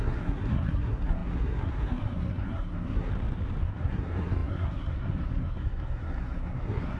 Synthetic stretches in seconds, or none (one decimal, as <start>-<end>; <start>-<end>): 0.0-3.1; 3.6-7.0